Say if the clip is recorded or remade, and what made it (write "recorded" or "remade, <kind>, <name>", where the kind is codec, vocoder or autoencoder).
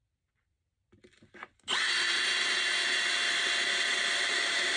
remade, vocoder, BigVGAN v2